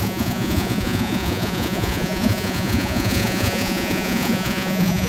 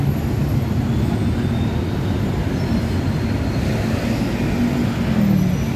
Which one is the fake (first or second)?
first